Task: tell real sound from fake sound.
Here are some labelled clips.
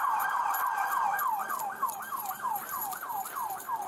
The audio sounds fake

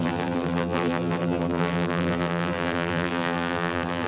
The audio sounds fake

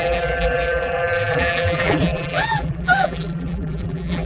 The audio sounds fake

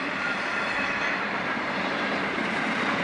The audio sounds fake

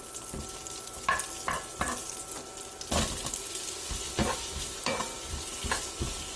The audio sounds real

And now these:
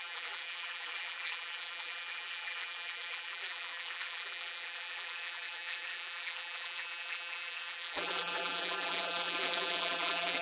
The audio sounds fake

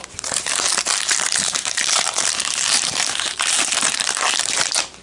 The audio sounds fake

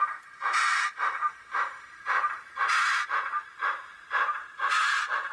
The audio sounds fake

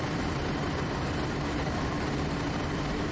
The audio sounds fake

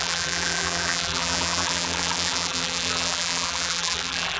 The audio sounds fake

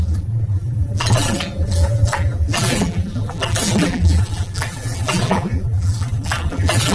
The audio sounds fake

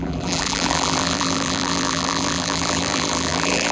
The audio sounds fake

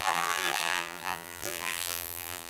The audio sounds fake